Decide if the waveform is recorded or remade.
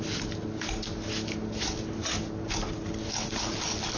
recorded